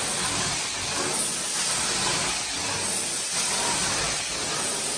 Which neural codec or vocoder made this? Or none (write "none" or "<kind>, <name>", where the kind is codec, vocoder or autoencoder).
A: none